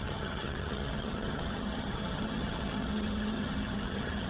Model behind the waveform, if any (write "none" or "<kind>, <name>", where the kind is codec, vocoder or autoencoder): vocoder, HiFi-GAN